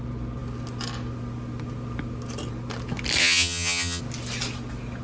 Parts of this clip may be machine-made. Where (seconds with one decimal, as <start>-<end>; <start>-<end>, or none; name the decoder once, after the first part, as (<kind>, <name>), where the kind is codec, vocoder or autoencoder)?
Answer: 3.2-4.0 (vocoder, HiFi-GAN)